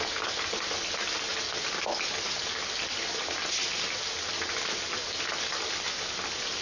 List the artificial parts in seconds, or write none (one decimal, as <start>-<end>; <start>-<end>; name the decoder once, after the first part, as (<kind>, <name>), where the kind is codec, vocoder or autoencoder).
none